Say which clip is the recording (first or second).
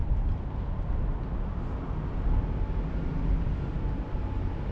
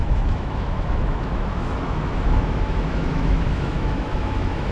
first